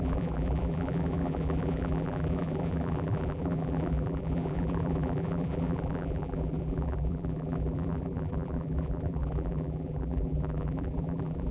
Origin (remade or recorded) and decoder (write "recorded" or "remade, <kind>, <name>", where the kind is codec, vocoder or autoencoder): remade, vocoder, BigVGAN v2